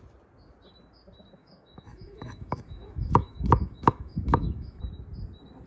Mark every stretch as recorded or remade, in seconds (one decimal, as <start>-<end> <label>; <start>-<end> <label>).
0.0-1.4 recorded; 1.4-4.8 remade; 4.8-5.7 recorded